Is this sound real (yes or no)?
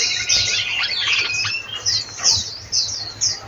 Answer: yes